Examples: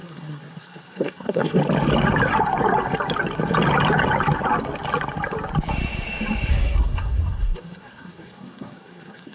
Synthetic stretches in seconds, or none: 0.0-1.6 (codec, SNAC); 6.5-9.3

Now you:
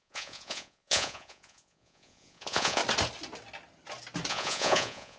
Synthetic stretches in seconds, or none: 0.0-2.8 (vocoder, Vocos); 4.3-5.2

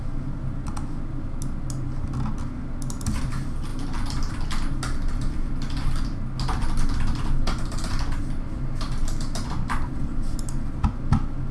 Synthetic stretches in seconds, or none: none

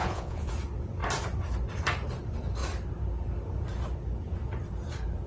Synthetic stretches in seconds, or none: 0.0-0.5 (vocoder, Vocos)

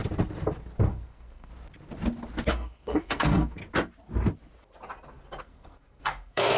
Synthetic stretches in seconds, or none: 0.9-1.5 (codec, SNAC); 2.5-3.6; 5.4-6.6

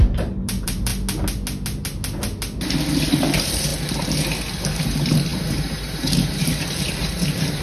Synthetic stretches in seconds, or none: 0.0-0.9 (vocoder, BigVGAN v2); 3.1-3.7; 4.8-7.6